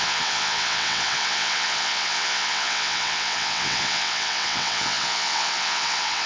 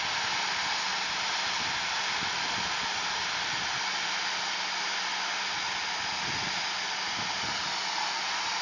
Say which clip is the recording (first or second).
second